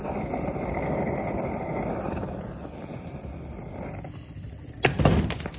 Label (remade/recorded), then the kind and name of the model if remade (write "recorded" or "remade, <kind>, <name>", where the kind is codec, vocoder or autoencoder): remade, vocoder, BigVGAN v2